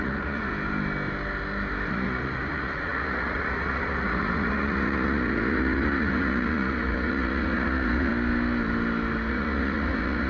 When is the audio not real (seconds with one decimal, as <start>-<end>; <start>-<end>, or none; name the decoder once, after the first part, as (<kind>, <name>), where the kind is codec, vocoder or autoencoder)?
0.0-0.5 (vocoder, Vocos); 1.9-8.1; 9.3-10.3